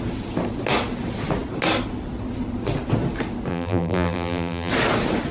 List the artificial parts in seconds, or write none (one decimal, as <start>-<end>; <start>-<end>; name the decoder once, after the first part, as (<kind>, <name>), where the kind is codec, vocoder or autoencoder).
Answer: 3.5-4.7 (vocoder, BigVGAN v2)